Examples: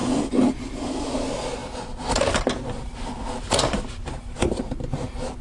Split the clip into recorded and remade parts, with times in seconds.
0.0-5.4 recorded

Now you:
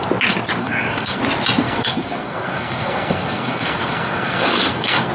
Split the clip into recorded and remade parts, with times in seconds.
0.0-0.6 recorded; 0.6-1.2 remade; 1.2-1.6 recorded; 1.6-5.1 remade

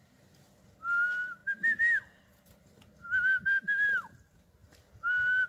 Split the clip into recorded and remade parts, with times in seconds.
0.0-5.5 recorded

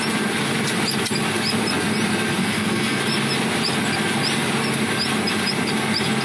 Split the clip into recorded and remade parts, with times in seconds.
0.0-2.4 recorded; 2.4-3.0 remade; 3.0-6.2 recorded